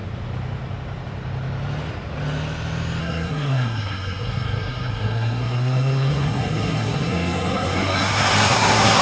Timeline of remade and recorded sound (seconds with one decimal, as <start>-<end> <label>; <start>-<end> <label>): 0.0-3.0 recorded; 3.0-9.0 remade